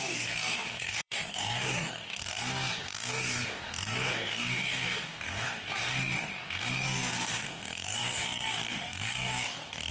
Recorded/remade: remade